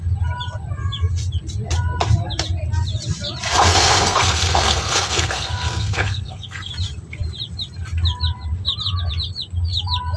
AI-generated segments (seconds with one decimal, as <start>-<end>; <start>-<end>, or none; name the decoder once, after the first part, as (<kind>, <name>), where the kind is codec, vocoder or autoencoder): 3.7-6.7 (codec, SNAC)